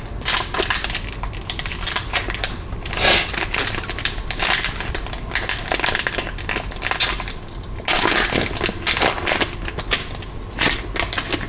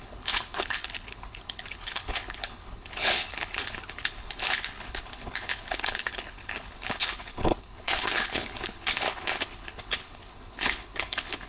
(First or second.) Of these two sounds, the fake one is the second